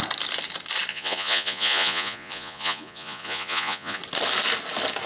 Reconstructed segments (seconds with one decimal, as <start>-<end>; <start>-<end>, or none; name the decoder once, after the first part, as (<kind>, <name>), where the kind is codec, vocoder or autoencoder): 0.9-4.0 (vocoder, Vocos)